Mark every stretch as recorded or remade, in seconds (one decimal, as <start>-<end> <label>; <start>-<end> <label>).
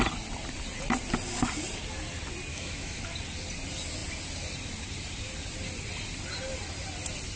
0.0-2.5 recorded; 2.5-3.0 remade; 3.0-7.4 recorded